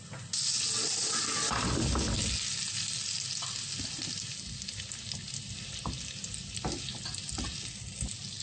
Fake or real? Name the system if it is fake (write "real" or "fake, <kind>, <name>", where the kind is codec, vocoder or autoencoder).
real